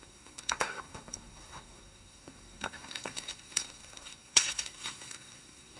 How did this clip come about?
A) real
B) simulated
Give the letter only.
B